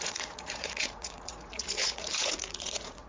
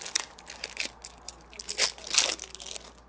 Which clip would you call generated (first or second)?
first